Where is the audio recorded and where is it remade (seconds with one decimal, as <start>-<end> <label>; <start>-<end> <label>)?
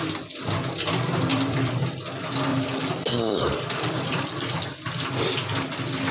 0.0-1.3 recorded; 1.3-1.8 remade; 1.8-2.5 recorded; 2.5-4.5 remade; 4.5-6.1 recorded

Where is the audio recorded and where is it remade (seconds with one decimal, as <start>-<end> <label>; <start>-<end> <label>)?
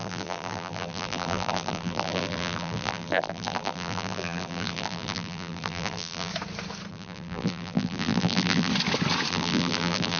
0.0-6.3 remade; 6.3-6.9 recorded; 6.9-8.7 remade; 8.7-9.3 recorded; 9.3-10.2 remade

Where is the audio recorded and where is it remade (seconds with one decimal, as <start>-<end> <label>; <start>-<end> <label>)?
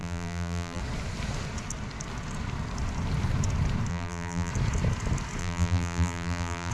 0.0-0.8 remade; 0.8-3.9 recorded; 3.9-4.5 remade; 4.5-5.4 recorded; 5.4-6.7 remade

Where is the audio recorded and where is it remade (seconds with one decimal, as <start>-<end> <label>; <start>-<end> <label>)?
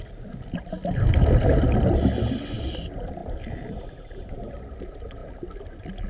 0.0-3.2 recorded; 3.2-4.8 remade; 4.8-6.1 recorded